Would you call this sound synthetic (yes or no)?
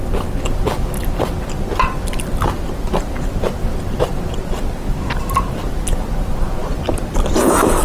no